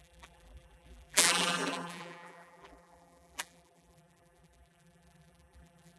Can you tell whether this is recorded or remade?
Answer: remade